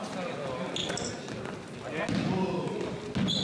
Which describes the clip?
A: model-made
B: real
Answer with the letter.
B